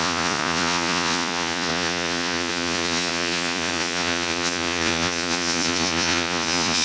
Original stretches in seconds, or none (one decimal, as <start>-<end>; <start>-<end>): none